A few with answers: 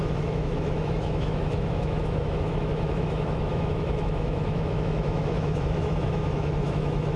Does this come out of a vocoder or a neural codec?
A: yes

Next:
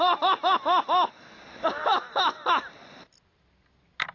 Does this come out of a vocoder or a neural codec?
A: no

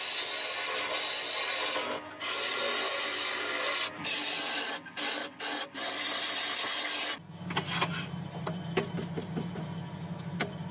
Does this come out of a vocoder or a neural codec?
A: no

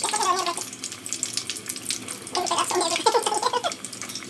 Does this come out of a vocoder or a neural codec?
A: no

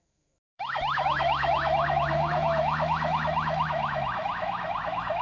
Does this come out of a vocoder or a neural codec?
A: yes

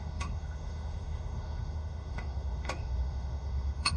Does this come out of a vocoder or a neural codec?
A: yes